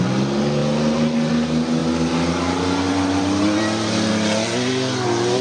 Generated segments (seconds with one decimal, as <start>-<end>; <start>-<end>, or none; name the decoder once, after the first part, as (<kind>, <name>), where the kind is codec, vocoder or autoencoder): none